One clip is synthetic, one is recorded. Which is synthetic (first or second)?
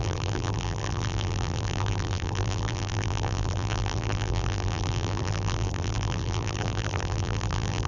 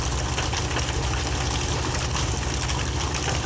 first